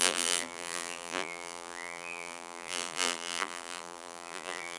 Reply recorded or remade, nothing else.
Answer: remade